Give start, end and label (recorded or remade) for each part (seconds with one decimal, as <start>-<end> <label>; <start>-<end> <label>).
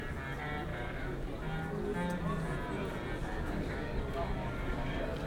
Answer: 0.0-0.7 recorded; 0.7-1.3 remade; 1.3-3.2 recorded; 3.2-5.3 remade